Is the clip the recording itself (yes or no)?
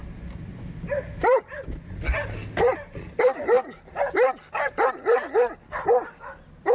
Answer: yes